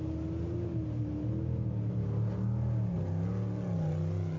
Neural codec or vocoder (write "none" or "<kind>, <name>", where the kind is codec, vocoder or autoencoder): none